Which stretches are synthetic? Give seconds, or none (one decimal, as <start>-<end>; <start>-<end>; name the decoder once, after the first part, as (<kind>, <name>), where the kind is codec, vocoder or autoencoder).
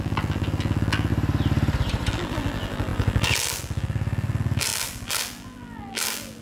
0.0-1.1 (vocoder, BigVGAN v2); 2.1-6.4